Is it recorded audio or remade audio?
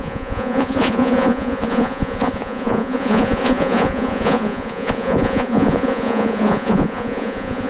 remade